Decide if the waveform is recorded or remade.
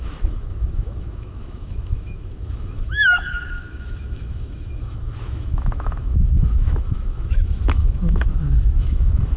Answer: remade